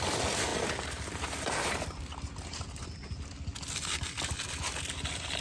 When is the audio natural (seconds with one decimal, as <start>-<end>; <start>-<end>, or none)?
0.0-5.4